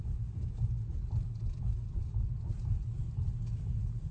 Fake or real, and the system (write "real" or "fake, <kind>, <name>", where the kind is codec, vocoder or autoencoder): real